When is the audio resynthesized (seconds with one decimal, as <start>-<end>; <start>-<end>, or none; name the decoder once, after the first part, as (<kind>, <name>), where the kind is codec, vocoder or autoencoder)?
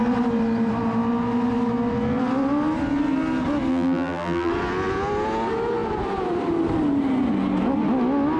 3.7-4.5 (vocoder, BigVGAN v2)